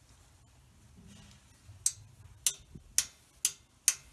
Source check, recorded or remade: recorded